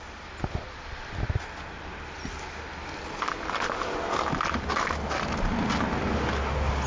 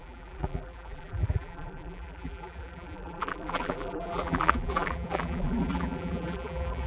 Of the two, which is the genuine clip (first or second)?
first